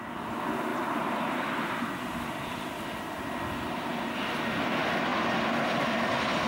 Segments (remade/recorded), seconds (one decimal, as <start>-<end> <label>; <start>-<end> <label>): 0.0-0.7 recorded; 0.7-3.0 remade; 3.0-6.5 recorded